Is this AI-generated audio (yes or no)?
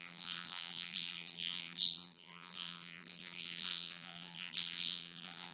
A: yes